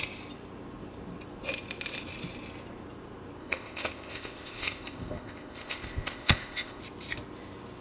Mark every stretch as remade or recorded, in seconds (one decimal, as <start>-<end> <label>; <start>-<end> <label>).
0.0-3.4 recorded; 3.4-6.8 remade; 6.8-7.8 recorded